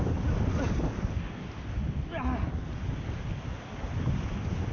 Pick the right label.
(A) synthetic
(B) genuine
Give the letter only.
B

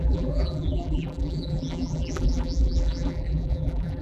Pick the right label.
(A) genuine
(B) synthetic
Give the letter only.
B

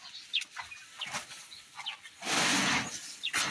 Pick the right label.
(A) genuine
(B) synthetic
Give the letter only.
A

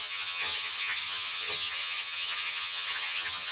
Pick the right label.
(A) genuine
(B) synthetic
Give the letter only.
B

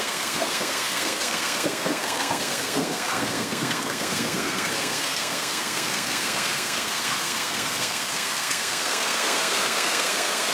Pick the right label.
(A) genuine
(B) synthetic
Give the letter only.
B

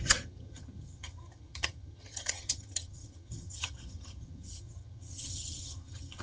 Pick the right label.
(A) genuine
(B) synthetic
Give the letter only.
B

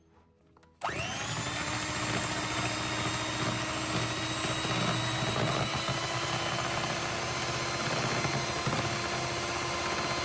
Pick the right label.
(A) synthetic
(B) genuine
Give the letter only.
B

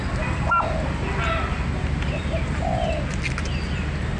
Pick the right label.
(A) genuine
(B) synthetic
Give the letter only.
A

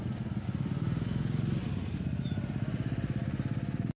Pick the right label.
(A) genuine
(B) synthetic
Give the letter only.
A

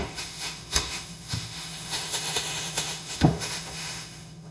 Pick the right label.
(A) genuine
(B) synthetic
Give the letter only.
B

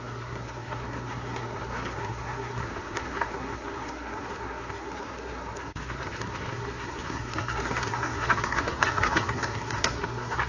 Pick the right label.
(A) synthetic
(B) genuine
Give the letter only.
A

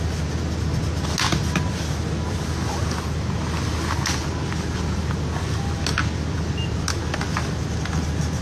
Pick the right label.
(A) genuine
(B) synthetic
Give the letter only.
A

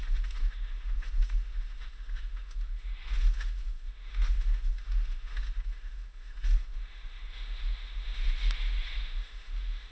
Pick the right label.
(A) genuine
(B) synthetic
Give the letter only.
B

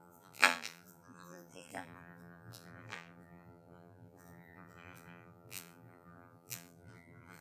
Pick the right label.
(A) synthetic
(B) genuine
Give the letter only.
A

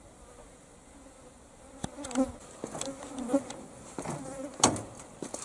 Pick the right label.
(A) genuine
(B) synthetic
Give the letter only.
A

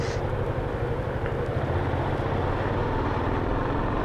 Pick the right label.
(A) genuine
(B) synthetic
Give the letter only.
A